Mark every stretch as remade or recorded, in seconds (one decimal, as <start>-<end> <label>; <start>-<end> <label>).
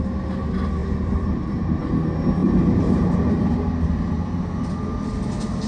0.0-0.8 recorded; 0.8-1.9 remade; 1.9-2.4 recorded; 2.4-4.7 remade; 4.7-5.7 recorded